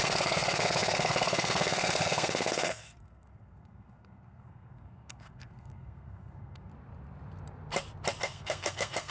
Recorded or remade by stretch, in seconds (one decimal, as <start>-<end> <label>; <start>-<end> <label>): 0.0-6.7 remade; 6.7-8.2 recorded; 8.2-9.1 remade

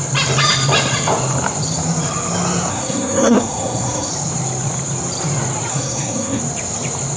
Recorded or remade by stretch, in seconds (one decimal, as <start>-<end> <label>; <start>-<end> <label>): 0.0-2.7 recorded; 2.7-4.1 remade; 4.1-5.7 recorded; 5.7-6.4 remade; 6.4-7.2 recorded

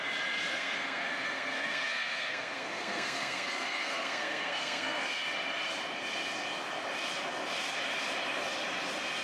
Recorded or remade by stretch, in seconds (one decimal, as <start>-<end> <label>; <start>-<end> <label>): 0.0-0.5 recorded; 0.5-5.2 remade; 5.2-9.2 recorded

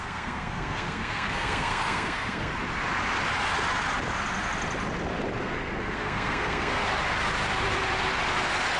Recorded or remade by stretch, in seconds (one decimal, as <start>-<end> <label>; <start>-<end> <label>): 0.0-2.5 remade; 2.5-5.4 recorded; 5.4-6.8 remade; 6.8-8.8 recorded

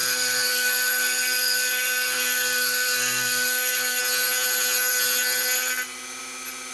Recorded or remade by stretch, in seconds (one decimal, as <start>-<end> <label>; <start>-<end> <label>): 0.0-4.0 remade; 4.0-6.7 recorded

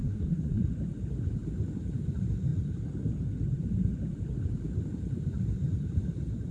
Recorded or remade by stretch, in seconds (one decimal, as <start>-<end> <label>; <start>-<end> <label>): 0.0-0.7 remade; 0.7-6.5 recorded